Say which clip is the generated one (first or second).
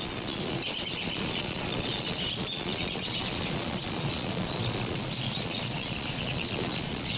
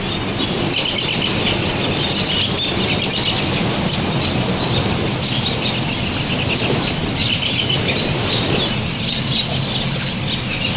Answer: first